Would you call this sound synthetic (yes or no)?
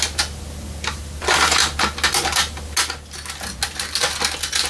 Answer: no